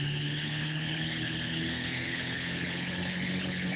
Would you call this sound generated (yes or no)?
yes